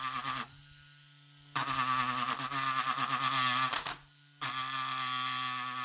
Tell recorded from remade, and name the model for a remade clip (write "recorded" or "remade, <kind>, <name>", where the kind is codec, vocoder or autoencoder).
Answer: recorded